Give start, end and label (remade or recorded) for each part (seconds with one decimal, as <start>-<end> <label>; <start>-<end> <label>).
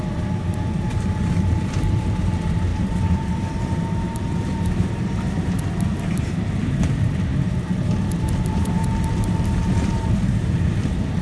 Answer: 0.0-11.2 remade